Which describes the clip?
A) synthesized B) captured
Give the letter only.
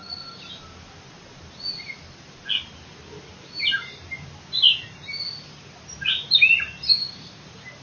B